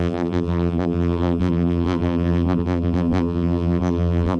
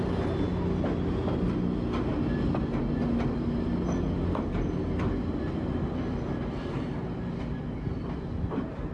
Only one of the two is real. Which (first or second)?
second